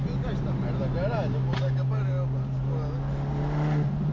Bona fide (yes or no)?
yes